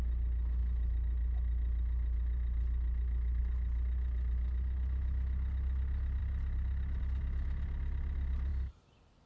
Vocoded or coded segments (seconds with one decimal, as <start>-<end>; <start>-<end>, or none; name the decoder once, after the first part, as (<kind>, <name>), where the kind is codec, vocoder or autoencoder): none